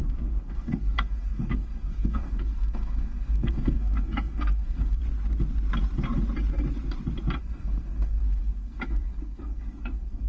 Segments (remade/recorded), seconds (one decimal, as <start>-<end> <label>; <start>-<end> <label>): 0.0-5.0 remade; 5.0-7.4 recorded; 7.4-10.3 remade